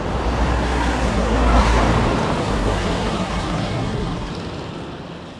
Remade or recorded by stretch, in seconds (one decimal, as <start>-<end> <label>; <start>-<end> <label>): 0.0-0.5 recorded; 0.5-1.8 remade; 1.8-2.4 recorded; 2.4-4.3 remade; 4.3-5.4 recorded

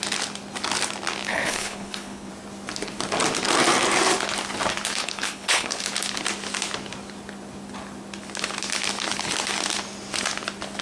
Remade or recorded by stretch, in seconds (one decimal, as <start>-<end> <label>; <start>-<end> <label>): 0.0-1.3 recorded; 1.3-2.3 remade; 2.3-5.0 recorded; 5.0-5.8 remade; 5.8-10.8 recorded

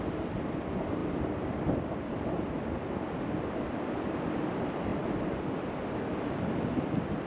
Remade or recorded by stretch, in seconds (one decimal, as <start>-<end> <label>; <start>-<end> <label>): 0.0-1.0 recorded; 1.0-4.5 remade; 4.5-7.3 recorded

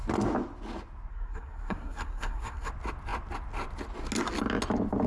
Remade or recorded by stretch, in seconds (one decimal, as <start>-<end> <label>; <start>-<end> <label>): 0.0-1.1 recorded; 1.1-2.7 remade; 2.7-5.1 recorded

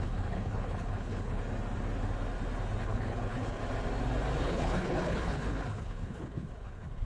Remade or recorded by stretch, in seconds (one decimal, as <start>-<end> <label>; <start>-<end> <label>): 0.0-1.4 remade; 1.4-2.8 recorded; 2.8-3.6 remade; 3.6-4.4 recorded; 4.4-7.1 remade

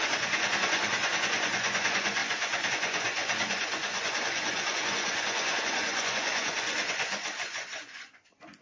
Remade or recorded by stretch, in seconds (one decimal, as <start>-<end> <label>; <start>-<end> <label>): 0.0-8.6 remade

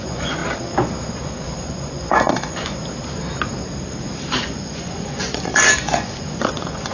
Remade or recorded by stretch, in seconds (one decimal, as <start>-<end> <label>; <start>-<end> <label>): 0.0-0.4 remade; 0.4-1.1 recorded; 1.1-2.8 remade; 2.8-4.3 recorded; 4.3-6.9 remade